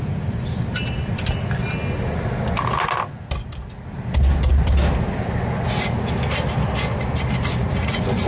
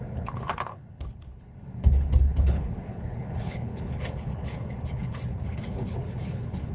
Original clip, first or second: first